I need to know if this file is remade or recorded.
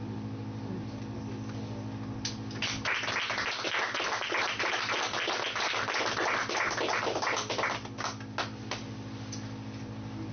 recorded